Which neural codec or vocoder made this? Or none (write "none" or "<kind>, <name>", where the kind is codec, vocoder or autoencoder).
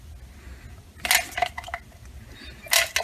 none